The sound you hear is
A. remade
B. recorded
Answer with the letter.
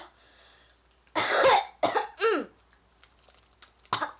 B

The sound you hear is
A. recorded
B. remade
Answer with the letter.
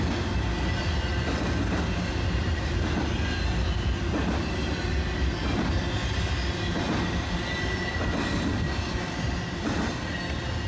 A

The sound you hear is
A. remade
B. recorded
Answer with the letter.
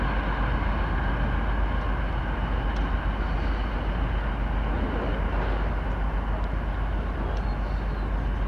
B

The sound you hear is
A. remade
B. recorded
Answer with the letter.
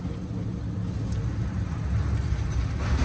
B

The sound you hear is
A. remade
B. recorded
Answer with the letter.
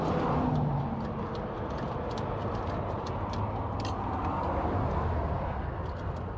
B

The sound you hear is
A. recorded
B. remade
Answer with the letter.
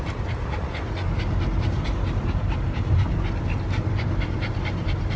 A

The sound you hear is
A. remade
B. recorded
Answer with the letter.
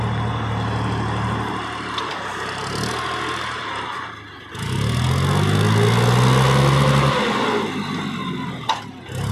B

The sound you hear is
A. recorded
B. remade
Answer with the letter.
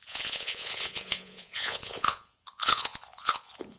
B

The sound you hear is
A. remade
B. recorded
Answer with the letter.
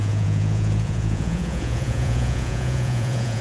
A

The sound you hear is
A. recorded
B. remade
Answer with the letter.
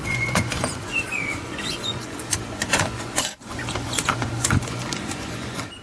B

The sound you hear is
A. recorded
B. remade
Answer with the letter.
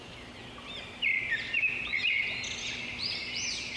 A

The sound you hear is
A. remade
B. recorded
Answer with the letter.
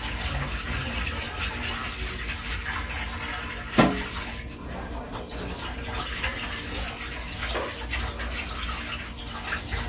B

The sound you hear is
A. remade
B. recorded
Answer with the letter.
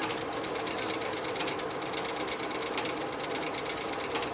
B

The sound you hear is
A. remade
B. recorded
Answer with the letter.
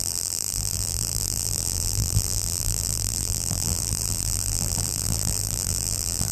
A